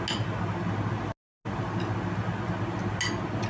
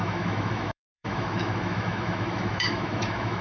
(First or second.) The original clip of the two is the first